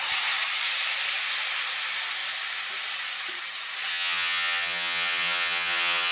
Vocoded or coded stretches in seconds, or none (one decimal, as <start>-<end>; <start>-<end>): 3.9-6.1